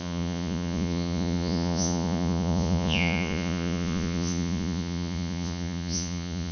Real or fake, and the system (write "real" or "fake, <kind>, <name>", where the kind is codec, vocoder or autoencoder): fake, vocoder, Vocos